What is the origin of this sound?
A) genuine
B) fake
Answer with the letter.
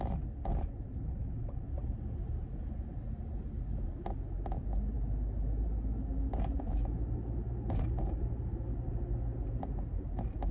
A